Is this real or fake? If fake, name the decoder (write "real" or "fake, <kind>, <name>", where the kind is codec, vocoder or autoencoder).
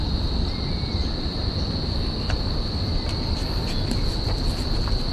fake, vocoder, BigVGAN v2